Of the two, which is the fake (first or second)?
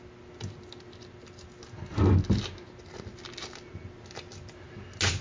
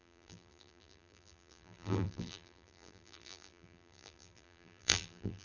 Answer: second